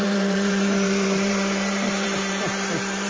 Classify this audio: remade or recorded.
remade